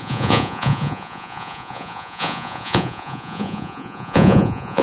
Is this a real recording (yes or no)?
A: no